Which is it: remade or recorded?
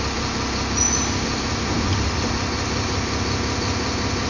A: recorded